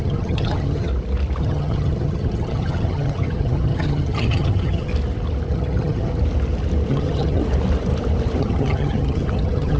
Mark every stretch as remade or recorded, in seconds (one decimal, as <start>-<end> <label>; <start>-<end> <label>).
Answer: 0.0-0.9 remade; 0.9-1.4 recorded; 1.4-4.9 remade; 4.9-5.5 recorded; 5.5-6.1 remade; 6.1-6.9 recorded; 6.9-7.4 remade; 7.4-8.4 recorded; 8.4-9.8 remade